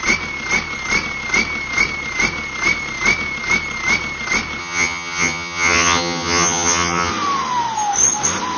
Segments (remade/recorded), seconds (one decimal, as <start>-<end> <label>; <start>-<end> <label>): 0.0-4.6 recorded; 4.6-7.1 remade; 7.1-8.6 recorded